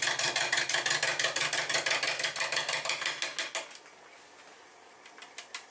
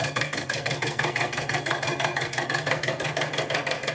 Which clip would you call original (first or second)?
first